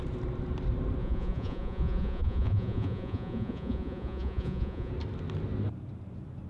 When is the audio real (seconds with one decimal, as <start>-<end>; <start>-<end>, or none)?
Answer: 0.0-1.0; 4.9-6.5